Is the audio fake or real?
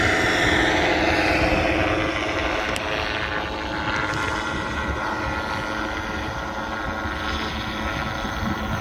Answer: real